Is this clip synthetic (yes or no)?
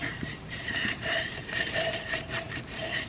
yes